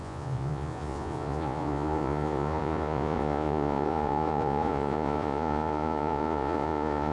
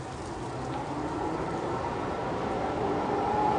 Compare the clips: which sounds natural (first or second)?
second